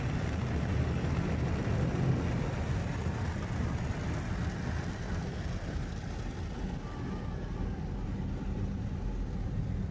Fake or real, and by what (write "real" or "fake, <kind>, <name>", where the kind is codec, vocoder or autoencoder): real